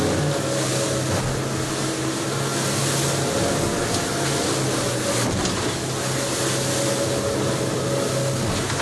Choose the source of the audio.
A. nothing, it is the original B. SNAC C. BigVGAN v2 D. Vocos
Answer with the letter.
A